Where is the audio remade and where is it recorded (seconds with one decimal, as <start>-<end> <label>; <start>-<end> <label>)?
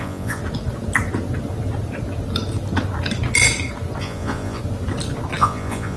0.0-0.4 remade; 0.4-4.0 recorded; 4.0-4.6 remade; 4.6-5.4 recorded; 5.4-6.0 remade